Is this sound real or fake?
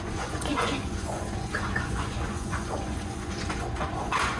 fake